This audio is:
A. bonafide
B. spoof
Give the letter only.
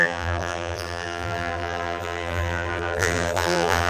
B